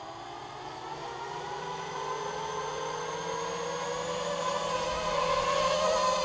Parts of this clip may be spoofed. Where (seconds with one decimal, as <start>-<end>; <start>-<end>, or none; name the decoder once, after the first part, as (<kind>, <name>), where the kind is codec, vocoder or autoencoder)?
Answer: 0.9-1.6 (vocoder, BigVGAN v2)